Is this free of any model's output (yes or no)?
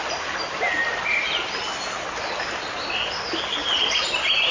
yes